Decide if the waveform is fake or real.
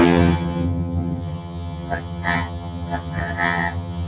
fake